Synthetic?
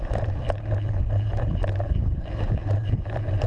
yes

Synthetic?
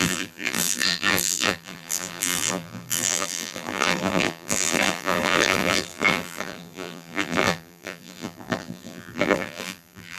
yes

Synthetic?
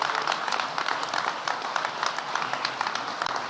yes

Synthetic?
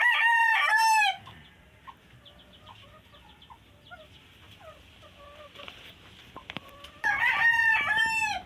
yes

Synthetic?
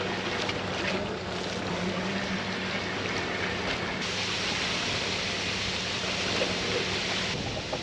no